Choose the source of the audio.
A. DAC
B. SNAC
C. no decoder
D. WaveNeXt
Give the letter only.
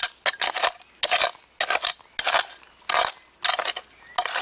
C